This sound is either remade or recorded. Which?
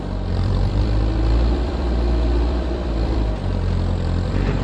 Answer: remade